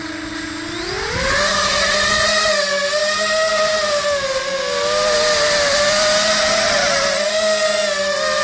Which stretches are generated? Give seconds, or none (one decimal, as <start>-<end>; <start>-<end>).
3.0-3.9